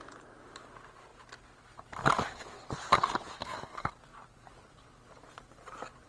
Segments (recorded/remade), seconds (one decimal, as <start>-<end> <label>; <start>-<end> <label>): 0.0-3.4 recorded; 3.4-3.9 remade; 3.9-6.1 recorded